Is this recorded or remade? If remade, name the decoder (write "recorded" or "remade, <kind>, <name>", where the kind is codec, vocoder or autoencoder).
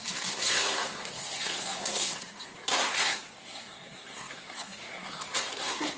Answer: remade, codec, SNAC